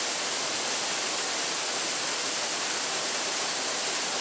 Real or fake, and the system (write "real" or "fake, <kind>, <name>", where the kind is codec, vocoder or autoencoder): real